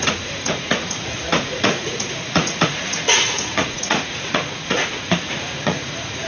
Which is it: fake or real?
fake